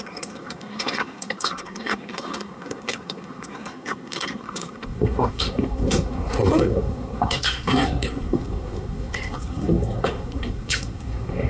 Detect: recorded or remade remade